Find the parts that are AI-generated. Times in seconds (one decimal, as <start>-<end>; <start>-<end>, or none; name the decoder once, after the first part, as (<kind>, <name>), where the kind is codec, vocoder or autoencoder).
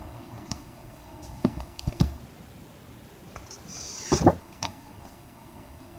0.0-2.2 (codec, SNAC); 4.4-6.0